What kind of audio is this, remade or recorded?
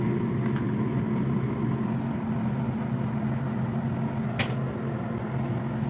recorded